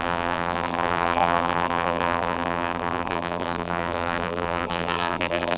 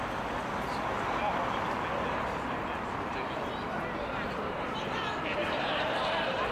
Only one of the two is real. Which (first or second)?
second